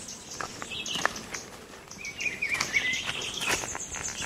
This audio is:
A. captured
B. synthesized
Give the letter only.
A